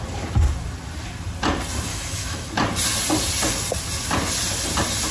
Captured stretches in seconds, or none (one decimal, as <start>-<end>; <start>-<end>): 0.0-1.9; 2.5-5.1